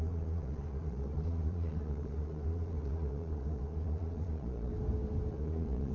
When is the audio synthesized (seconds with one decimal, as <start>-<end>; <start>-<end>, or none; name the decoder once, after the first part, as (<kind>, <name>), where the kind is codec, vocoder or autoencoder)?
0.0-4.7 (vocoder, Vocos); 5.3-5.9